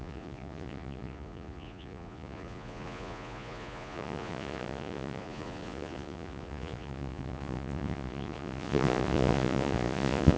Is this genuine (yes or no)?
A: no